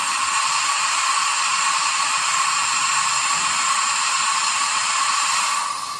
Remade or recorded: remade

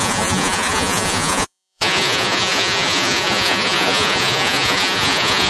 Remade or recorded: remade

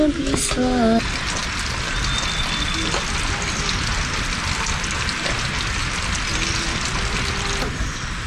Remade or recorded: recorded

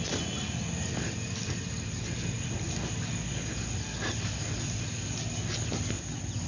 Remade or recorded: recorded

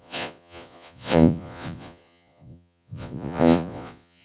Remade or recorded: remade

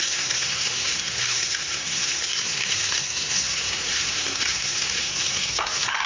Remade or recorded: remade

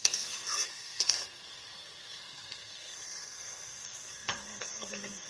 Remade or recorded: remade